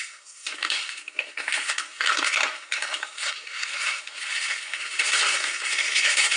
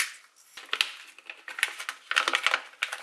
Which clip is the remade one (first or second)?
first